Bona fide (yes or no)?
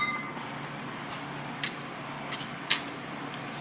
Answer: yes